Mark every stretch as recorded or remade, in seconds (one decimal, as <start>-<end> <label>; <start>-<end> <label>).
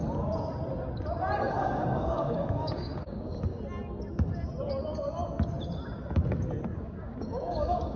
0.0-1.6 recorded; 1.6-3.4 remade; 3.4-6.7 recorded; 6.7-8.0 remade